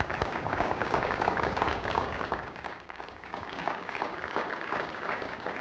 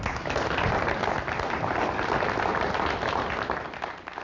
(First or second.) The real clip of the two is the second